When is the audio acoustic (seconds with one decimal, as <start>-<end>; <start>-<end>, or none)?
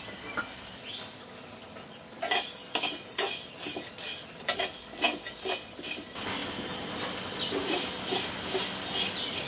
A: 0.0-9.5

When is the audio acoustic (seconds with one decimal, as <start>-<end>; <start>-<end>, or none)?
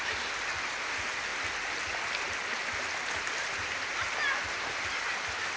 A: 0.0-5.6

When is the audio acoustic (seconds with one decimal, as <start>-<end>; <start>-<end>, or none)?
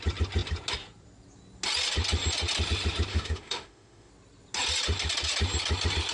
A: 0.0-3.1; 4.1-6.1